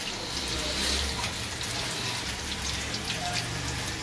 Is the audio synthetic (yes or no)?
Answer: no